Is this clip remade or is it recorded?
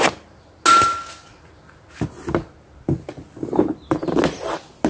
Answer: recorded